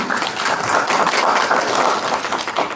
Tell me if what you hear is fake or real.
real